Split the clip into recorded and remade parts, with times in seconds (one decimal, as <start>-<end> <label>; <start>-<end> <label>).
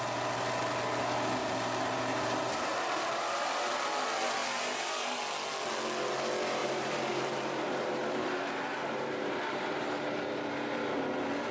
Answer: 0.0-1.4 recorded; 1.4-3.8 remade; 3.8-4.4 recorded; 4.4-5.2 remade; 5.2-6.6 recorded; 6.6-11.0 remade; 11.0-11.5 recorded